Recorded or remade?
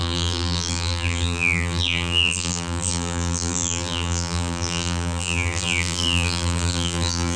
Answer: remade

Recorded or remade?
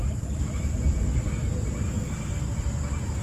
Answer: recorded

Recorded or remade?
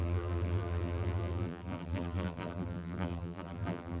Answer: remade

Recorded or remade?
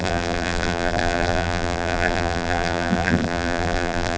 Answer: remade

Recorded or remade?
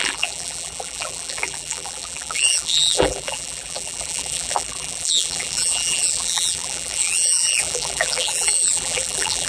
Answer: remade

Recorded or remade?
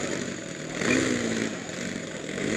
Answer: remade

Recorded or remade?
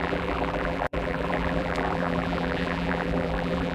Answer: remade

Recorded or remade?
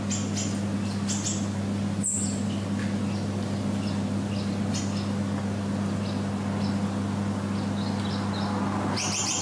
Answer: recorded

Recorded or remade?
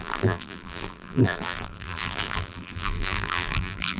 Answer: remade